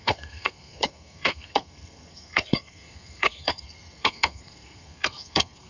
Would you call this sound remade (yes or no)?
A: yes